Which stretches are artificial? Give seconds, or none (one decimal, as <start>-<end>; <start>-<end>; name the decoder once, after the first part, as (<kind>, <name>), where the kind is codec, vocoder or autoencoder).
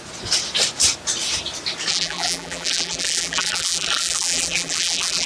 1.9-5.3 (vocoder, BigVGAN v2)